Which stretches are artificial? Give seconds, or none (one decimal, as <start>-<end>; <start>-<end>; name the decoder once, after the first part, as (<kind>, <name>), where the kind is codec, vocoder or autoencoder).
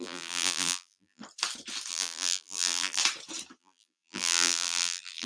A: 0.0-1.2 (vocoder, BigVGAN v2); 1.9-3.0; 3.6-5.3